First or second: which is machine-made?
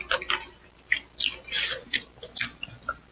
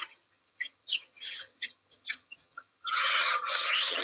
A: second